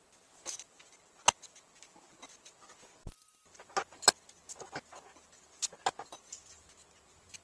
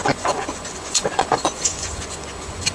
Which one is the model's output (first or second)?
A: second